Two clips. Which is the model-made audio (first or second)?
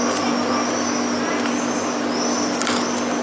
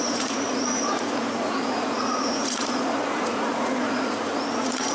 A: second